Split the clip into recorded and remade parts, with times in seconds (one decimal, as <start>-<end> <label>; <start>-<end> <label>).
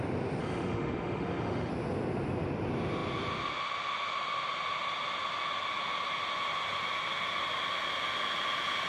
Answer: 0.0-0.4 recorded; 0.4-1.7 remade; 1.7-8.9 recorded